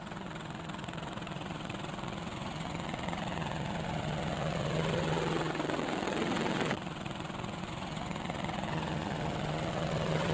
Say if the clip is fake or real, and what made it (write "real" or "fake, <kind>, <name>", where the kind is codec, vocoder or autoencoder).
fake, vocoder, WaveNeXt